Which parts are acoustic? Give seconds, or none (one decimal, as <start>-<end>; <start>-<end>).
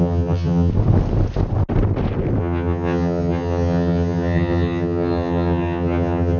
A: 0.7-2.4